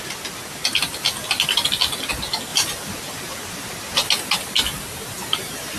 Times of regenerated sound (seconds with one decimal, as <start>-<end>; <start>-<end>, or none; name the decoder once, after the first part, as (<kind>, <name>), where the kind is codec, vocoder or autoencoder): none